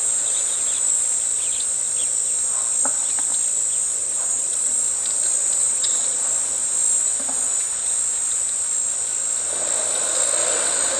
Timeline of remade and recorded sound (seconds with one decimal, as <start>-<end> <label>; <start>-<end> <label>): 0.0-4.0 recorded; 4.0-4.8 remade; 4.8-5.6 recorded; 5.6-6.2 remade; 6.2-11.0 recorded